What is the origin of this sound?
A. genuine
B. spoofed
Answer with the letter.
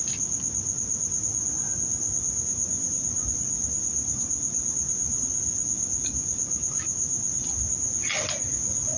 A